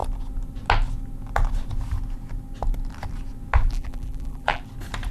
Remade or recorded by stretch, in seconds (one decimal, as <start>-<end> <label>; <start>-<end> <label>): 0.0-3.6 recorded; 3.6-4.6 remade; 4.6-5.1 recorded